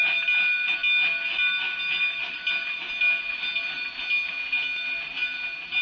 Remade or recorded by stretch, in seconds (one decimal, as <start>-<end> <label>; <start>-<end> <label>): 0.0-5.8 recorded